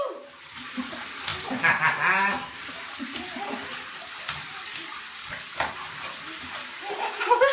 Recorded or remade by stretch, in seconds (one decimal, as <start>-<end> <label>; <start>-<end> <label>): 0.0-7.5 recorded